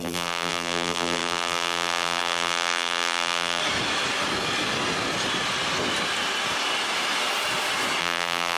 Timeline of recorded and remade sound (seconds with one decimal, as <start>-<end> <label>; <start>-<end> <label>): 0.0-3.6 remade; 3.6-8.0 recorded; 8.0-8.6 remade